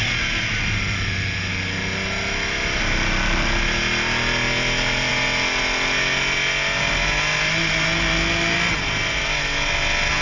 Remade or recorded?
recorded